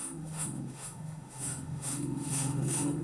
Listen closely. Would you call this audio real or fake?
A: fake